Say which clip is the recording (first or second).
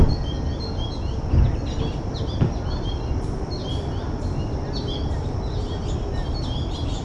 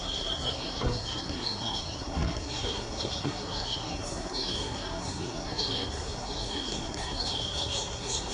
first